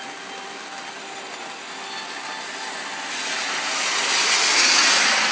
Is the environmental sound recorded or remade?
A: recorded